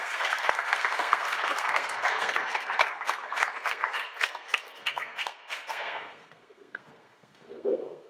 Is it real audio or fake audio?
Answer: fake